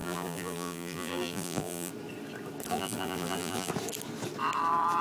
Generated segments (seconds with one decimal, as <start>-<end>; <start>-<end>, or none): 0.0-1.9; 2.7-3.7